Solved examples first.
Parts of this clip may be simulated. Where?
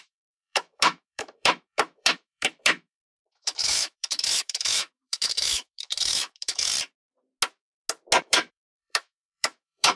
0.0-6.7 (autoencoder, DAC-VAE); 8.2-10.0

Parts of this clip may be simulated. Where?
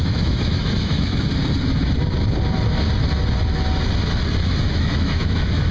0.0-1.3 (autoencoder, DAC-VAE); 4.7-5.7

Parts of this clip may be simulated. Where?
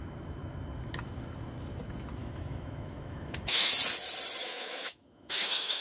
2.2-3.7 (autoencoder, DAC-VAE); 4.4-5.8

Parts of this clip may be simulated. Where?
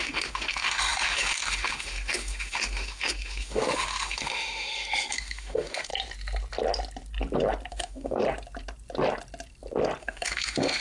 0.0-5.9 (autoencoder, DAC-VAE); 7.7-8.2; 10.0-10.8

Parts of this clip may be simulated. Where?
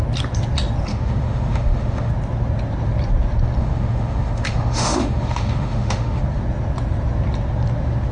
0.9-2.1 (autoencoder, DAC-VAE); 3.6-6.2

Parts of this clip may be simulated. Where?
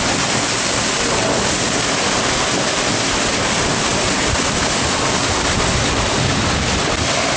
none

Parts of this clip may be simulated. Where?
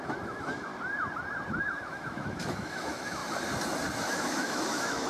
0.0-0.7 (autoencoder, DAC-VAE); 1.6-3.2; 4.0-5.1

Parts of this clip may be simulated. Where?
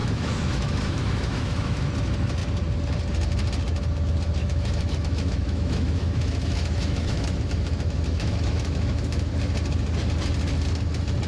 0.0-1.9 (autoencoder, DAC-VAE); 4.4-9.3